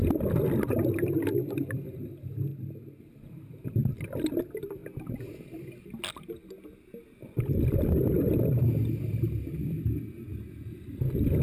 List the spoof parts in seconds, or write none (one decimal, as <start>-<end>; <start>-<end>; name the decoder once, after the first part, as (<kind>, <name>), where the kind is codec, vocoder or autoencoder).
1.4-2.5 (vocoder, BigVGAN v2); 3.0-3.8; 4.3-4.8; 9.4-11.4